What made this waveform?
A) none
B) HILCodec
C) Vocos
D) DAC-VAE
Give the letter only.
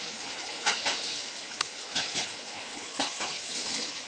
B